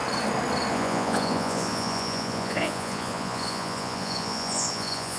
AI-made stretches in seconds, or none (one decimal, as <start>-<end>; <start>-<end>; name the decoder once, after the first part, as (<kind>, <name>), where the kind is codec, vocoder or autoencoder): 0.7-5.2 (vocoder, Vocos)